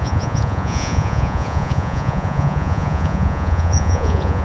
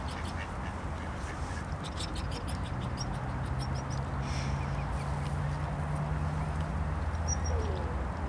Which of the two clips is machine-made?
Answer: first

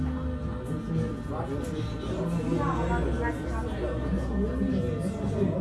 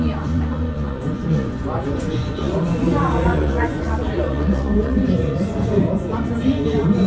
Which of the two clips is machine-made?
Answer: second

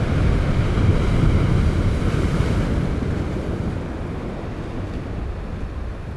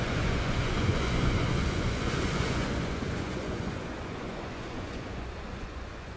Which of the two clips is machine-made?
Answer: second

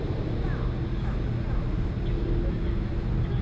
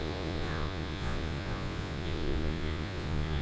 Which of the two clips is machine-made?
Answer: second